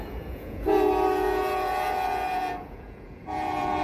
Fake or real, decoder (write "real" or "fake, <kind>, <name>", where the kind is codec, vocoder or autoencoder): fake, vocoder, Vocos